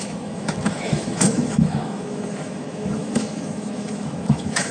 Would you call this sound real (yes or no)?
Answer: no